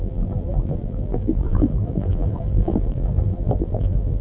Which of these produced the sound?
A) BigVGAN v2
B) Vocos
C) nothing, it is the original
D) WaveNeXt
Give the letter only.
A